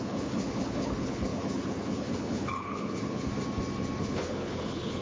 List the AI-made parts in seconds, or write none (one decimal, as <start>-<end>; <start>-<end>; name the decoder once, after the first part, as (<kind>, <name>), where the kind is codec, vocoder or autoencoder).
0.0-3.3 (codec, HILCodec); 4.0-5.0